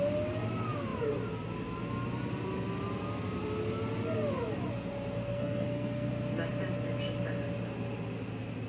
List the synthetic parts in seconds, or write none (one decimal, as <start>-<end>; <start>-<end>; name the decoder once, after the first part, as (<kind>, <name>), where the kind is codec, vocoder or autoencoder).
5.2-6.1 (codec, SNAC)